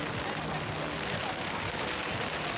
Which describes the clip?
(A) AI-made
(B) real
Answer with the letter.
B